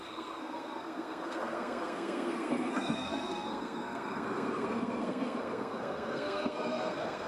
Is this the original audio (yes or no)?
no